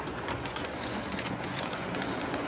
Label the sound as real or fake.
fake